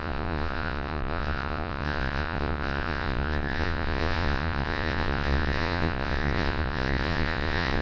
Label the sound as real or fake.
fake